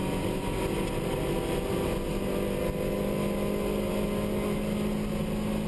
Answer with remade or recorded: recorded